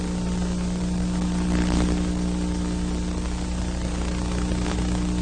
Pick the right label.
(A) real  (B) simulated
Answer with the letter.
A